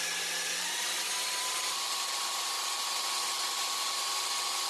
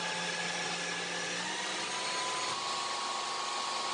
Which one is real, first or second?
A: second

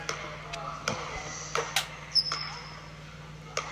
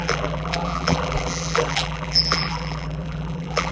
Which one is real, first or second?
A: first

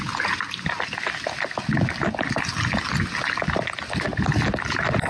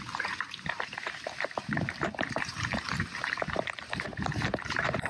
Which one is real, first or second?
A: first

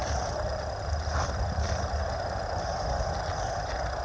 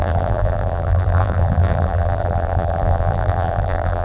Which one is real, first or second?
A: first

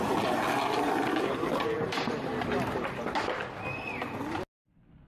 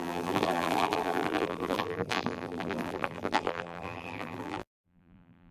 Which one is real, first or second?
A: first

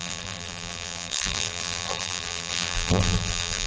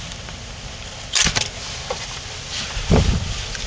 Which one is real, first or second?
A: second